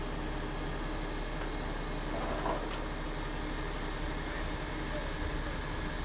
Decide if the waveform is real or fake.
real